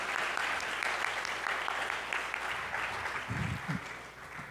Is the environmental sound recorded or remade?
recorded